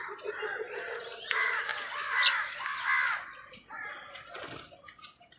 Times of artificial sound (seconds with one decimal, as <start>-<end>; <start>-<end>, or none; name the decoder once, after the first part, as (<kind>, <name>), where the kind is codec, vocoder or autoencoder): 0.0-1.7 (vocoder, BigVGAN v2); 4.9-5.4